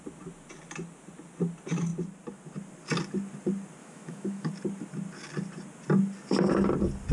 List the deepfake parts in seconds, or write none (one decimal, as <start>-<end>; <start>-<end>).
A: 3.8-4.5